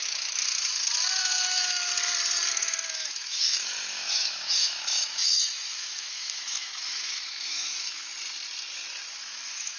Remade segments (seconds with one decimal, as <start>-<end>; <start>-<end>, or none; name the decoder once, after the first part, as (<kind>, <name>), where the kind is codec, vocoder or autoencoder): 0.0-0.5 (autoencoder, DAC-VAE); 1.2-1.9; 2.5-8.1; 9.2-9.8

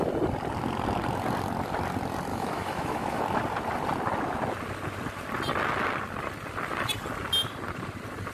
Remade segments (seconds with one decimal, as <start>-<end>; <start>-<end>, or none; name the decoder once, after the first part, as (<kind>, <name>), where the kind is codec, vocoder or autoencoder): 2.3-3.2 (autoencoder, DAC-VAE)

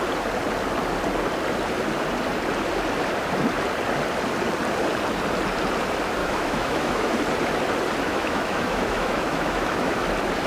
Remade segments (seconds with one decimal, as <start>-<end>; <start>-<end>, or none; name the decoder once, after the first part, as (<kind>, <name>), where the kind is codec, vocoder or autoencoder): 6.2-7.2 (autoencoder, DAC-VAE); 8.1-10.0

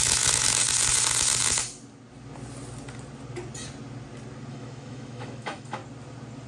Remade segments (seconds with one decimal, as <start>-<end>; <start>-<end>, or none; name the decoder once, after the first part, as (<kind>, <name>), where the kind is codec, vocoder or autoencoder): 0.0-0.6 (autoencoder, DAC-VAE); 4.5-5.8